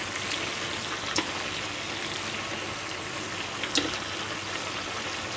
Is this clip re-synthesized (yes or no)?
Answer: no